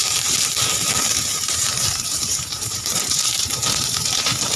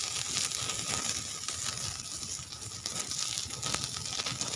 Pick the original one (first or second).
second